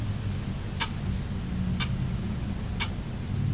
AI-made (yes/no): no